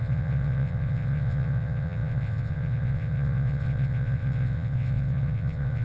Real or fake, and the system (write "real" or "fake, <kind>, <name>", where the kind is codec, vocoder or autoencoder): fake, vocoder, WaveNeXt